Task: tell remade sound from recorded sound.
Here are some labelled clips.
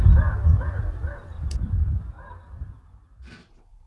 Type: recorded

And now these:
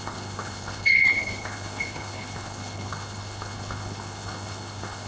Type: remade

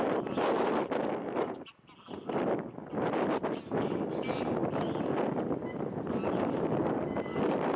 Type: recorded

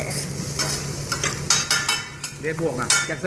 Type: recorded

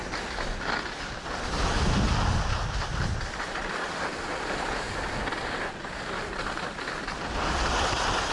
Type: recorded